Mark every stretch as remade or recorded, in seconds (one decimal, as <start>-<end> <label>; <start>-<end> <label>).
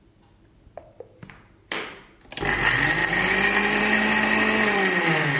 0.0-5.4 recorded